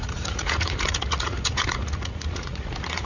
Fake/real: fake